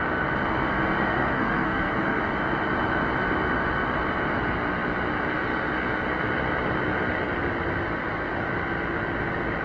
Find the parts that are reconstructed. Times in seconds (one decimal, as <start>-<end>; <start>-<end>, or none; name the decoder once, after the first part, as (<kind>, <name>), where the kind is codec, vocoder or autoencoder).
1.1-2.2 (codec, SNAC)